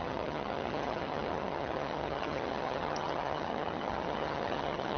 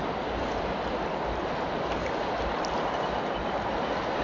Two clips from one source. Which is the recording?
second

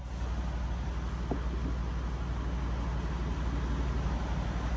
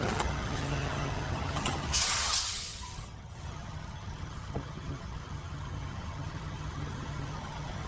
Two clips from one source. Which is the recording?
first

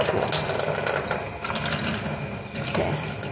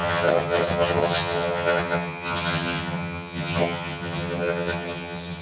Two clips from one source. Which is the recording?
first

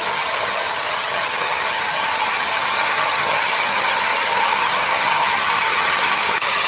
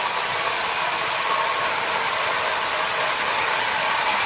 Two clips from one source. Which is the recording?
second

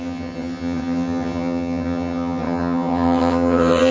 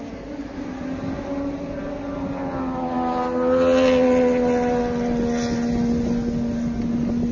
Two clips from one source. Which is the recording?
second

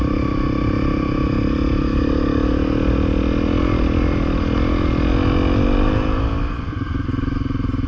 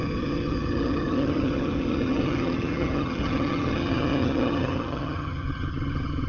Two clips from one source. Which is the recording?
first